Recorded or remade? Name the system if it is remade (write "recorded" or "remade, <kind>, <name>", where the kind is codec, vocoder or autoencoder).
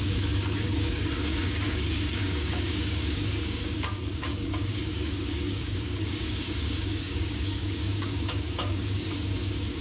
remade, codec, DAC